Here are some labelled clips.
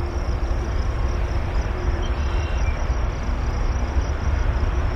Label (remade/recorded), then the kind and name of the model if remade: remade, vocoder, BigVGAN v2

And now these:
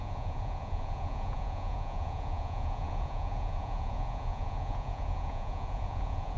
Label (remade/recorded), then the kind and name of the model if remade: remade, vocoder, Vocos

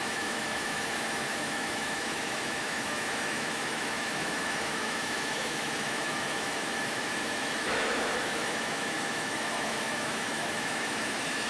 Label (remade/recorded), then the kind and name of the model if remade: remade, autoencoder, DAC-VAE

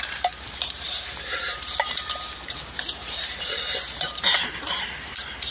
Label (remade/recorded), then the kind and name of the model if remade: remade, vocoder, BigVGAN v2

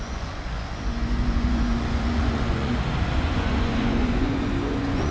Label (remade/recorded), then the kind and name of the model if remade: remade, vocoder, Vocos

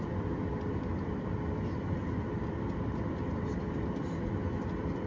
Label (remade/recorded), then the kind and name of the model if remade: remade, vocoder, BigVGAN v2